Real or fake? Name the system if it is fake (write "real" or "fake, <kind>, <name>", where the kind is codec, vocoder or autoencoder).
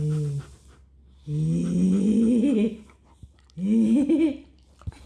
real